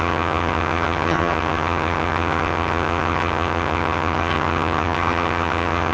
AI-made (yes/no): yes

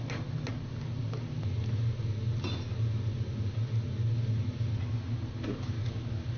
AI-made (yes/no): no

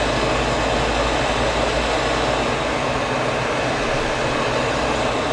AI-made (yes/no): no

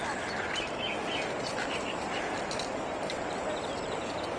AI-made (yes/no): no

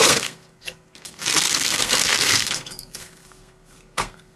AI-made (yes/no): yes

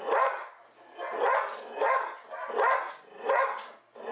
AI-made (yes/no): no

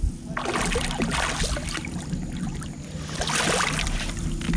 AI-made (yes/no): no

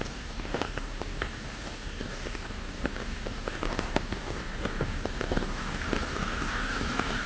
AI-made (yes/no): yes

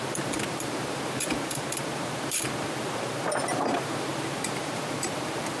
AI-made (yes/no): yes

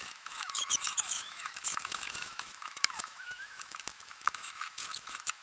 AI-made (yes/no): yes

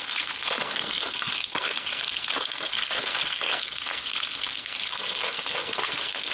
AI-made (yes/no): yes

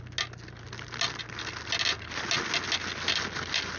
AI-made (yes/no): no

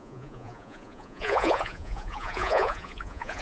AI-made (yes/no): yes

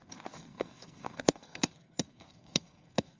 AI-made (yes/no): yes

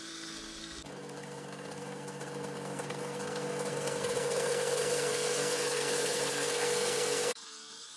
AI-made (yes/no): yes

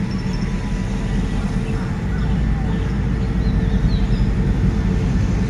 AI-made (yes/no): no